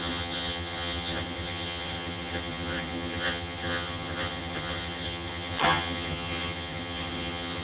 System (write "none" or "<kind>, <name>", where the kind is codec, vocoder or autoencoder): vocoder, HiFi-GAN